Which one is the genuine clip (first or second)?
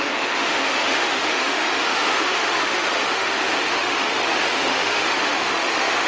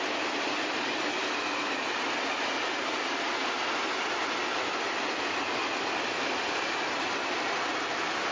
second